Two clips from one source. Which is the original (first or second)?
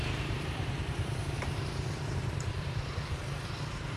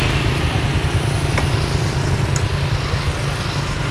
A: second